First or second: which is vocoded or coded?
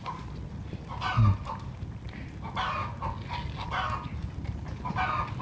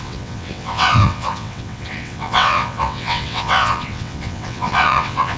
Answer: second